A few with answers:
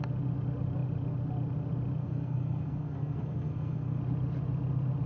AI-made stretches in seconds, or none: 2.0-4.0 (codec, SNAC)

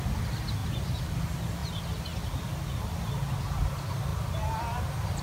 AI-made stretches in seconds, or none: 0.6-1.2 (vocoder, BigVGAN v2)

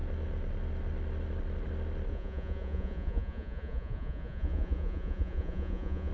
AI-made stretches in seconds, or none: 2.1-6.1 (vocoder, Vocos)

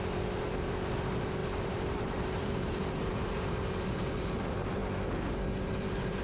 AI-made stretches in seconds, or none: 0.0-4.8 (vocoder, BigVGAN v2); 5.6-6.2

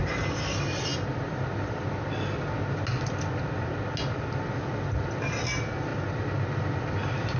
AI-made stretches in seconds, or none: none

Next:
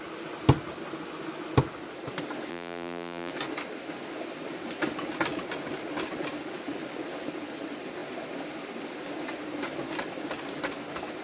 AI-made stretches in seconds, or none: 2.5-3.3 (vocoder, BigVGAN v2)